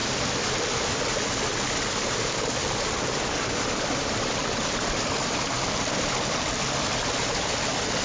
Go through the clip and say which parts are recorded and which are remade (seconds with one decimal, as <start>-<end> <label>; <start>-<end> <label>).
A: 0.0-2.6 recorded; 2.6-6.8 remade; 6.8-8.0 recorded